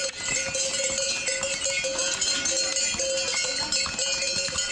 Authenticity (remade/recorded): recorded